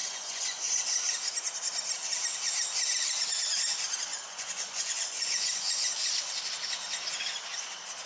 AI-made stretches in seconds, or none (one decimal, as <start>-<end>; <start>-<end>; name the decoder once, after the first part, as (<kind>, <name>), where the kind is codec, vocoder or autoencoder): 0.0-0.7 (vocoder, Vocos); 4.1-5.9